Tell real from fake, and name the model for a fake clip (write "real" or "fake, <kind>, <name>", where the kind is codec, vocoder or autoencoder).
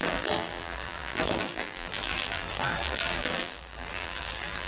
fake, vocoder, BigVGAN v2